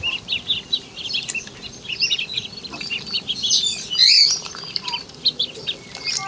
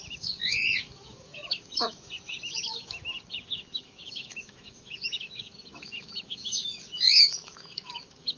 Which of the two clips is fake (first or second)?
second